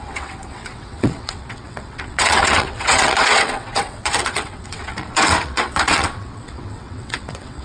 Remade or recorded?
remade